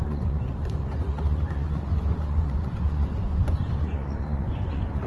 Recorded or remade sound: remade